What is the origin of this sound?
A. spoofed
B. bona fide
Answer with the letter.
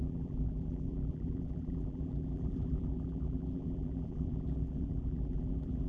A